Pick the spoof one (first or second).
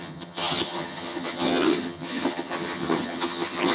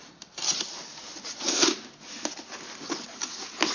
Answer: first